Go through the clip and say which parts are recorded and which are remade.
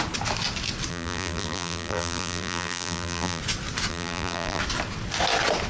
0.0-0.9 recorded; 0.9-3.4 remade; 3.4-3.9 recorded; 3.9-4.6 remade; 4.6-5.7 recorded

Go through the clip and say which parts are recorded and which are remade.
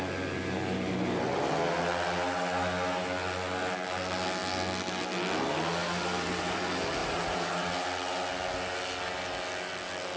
0.0-5.8 recorded; 5.8-6.6 remade; 6.6-7.0 recorded; 7.0-7.7 remade; 7.7-10.2 recorded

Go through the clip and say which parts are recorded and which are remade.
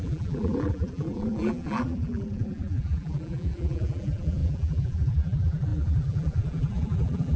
0.0-7.4 remade